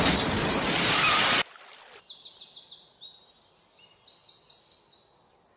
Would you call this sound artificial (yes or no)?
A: no